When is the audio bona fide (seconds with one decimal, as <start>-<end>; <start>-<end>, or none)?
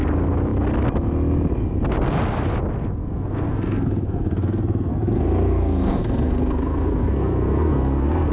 0.0-3.0